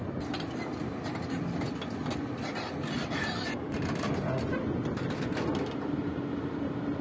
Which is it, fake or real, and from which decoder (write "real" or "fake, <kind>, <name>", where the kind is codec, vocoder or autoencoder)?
real